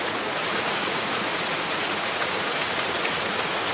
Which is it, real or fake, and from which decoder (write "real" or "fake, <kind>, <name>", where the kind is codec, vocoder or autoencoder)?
fake, vocoder, Vocos